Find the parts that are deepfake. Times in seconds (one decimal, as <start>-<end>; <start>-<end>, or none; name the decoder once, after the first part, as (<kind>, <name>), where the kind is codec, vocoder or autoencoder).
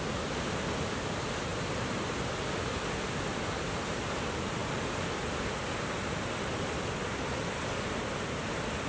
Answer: none